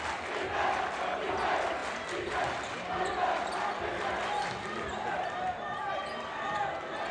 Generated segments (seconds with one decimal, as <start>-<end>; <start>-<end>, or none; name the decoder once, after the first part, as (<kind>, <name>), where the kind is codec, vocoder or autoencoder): none